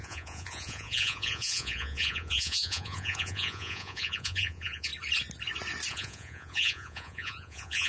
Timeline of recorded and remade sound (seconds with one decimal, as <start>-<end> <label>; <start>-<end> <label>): 0.0-4.9 remade; 4.9-5.9 recorded; 5.9-7.9 remade